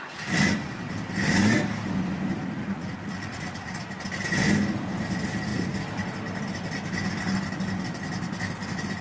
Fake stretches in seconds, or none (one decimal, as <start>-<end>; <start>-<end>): 2.6-3.8